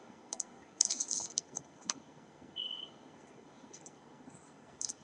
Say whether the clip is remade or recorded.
remade